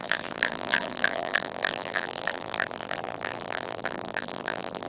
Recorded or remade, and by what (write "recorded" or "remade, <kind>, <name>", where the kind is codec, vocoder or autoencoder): remade, vocoder, BigVGAN v2